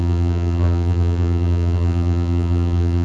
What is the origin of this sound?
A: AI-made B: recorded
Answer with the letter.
A